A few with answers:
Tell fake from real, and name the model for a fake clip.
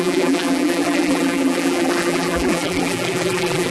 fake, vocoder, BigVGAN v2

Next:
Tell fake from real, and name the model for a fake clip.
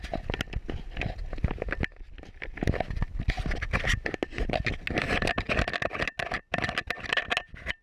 real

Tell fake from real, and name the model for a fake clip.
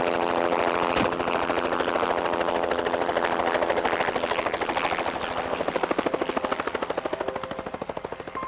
real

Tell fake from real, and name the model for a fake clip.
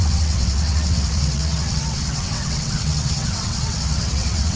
fake, vocoder, WaveNeXt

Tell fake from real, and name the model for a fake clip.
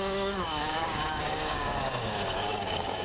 fake, codec, DAC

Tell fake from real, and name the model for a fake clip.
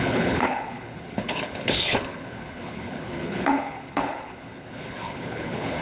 fake, codec, HILCodec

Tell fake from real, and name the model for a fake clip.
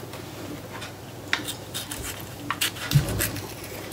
real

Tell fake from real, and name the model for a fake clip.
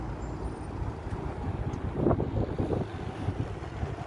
real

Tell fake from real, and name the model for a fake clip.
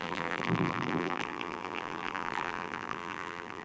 fake, vocoder, BigVGAN v2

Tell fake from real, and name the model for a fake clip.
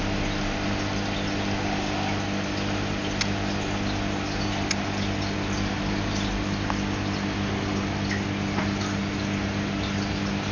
real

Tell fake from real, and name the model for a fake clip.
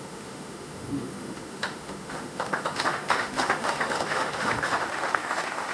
fake, autoencoder, DAC-VAE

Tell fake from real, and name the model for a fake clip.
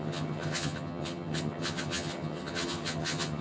fake, vocoder, HiFi-GAN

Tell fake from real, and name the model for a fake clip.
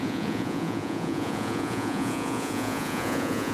fake, vocoder, Vocos